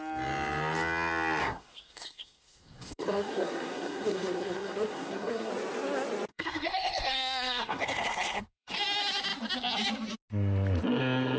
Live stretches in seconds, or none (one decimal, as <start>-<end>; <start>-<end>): 0.0-1.4; 5.5-6.3; 8.8-11.4